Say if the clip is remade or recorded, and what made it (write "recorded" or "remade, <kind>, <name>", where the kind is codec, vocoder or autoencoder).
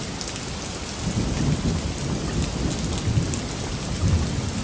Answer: recorded